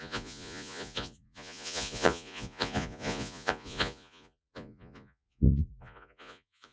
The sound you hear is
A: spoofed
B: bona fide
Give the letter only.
A